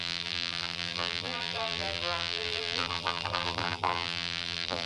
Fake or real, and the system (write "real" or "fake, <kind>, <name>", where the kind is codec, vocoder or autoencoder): fake, vocoder, BigVGAN v2